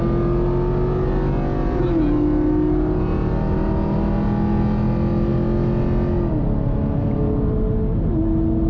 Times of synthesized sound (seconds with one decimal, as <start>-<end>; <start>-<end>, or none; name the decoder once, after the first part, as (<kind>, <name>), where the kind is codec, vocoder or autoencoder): none